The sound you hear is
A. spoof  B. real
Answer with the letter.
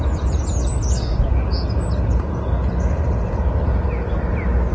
B